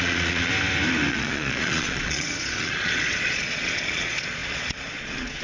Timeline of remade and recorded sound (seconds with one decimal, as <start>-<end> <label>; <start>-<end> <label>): 0.0-0.5 remade; 0.5-1.1 recorded; 1.1-5.4 remade